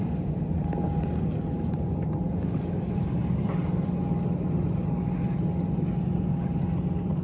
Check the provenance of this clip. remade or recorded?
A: recorded